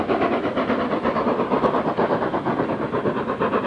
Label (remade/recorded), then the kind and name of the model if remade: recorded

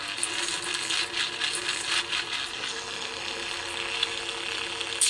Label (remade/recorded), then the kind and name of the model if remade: recorded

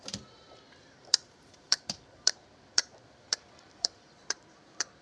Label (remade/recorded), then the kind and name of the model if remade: remade, vocoder, BigVGAN v2